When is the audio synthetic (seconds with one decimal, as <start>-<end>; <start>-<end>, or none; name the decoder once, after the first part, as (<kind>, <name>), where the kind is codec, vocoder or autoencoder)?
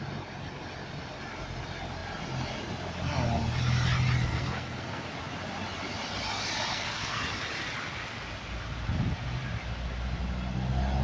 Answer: 4.3-5.1 (codec, SNAC); 6.7-7.2